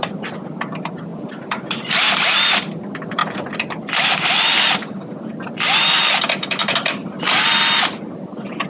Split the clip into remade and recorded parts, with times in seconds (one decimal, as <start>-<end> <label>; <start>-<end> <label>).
0.0-1.1 recorded; 1.1-2.1 remade; 2.1-6.6 recorded; 6.6-7.5 remade; 7.5-8.7 recorded

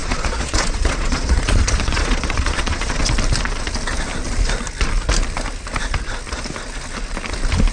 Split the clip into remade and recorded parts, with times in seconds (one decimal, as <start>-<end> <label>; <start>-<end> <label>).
0.0-3.0 remade; 3.0-7.7 recorded

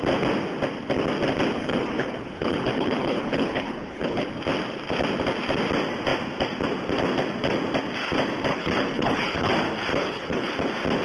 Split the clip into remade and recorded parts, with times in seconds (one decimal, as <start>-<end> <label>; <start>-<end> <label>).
0.0-1.6 recorded; 1.6-4.3 remade; 4.3-8.5 recorded; 8.5-9.5 remade; 9.5-9.9 recorded; 9.9-10.5 remade; 10.5-11.0 recorded

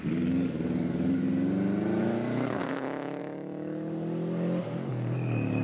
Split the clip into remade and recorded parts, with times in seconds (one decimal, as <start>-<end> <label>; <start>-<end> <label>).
0.0-1.3 remade; 1.3-2.0 recorded; 2.0-5.6 remade

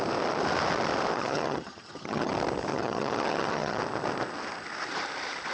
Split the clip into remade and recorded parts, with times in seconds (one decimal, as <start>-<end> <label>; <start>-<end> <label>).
0.0-1.1 recorded; 1.1-2.3 remade; 2.3-2.7 recorded; 2.7-3.8 remade; 3.8-5.5 recorded